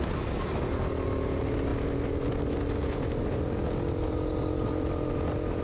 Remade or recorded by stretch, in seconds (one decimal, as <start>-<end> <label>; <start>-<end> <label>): 0.0-5.6 recorded